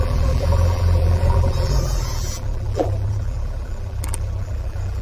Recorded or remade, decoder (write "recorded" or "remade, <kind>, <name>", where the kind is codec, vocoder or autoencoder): remade, vocoder, BigVGAN v2